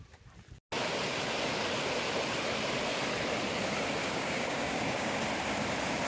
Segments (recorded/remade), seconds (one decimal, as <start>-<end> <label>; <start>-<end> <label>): 0.0-4.0 recorded; 4.0-5.2 remade; 5.2-6.1 recorded